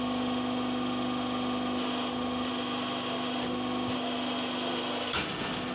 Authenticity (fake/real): real